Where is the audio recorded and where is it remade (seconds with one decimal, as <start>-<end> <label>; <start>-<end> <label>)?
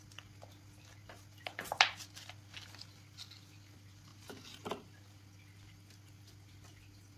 0.0-7.2 recorded